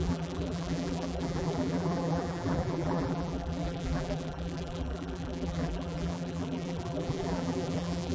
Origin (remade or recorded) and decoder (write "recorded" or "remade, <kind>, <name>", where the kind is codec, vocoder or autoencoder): remade, vocoder, BigVGAN v2